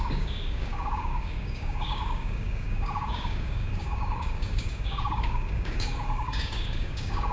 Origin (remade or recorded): remade